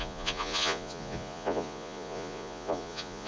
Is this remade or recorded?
remade